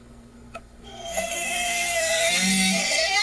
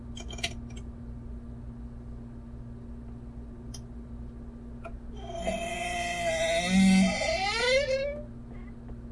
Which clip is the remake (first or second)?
first